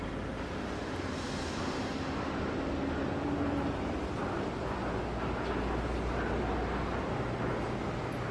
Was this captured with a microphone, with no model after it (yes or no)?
yes